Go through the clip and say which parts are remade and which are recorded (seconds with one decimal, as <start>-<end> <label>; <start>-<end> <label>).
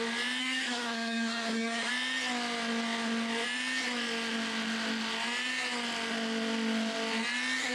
0.0-0.4 recorded; 0.4-1.9 remade; 1.9-7.7 recorded